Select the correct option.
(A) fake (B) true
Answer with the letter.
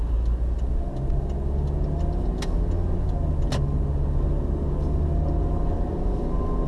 B